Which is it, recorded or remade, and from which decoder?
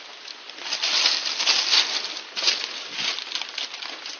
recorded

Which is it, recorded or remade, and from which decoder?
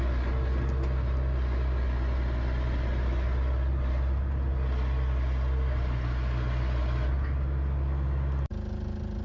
recorded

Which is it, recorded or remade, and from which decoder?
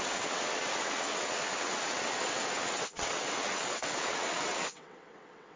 remade, vocoder, WaveNeXt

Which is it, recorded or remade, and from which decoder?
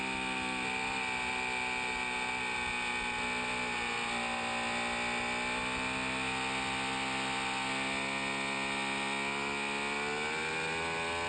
recorded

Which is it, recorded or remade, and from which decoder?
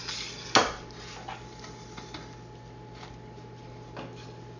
recorded